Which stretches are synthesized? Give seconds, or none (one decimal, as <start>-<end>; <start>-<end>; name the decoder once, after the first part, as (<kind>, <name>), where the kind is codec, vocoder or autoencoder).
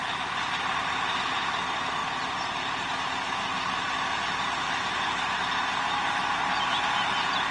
none